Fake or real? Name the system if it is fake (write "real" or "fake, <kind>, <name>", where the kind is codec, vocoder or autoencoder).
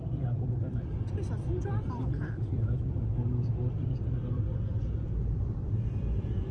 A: fake, vocoder, BigVGAN v2